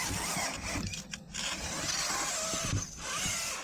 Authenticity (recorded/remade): recorded